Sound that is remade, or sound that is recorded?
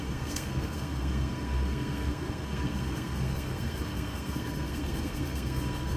remade